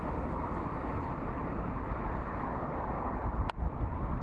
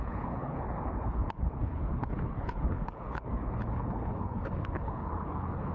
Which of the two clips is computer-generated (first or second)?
second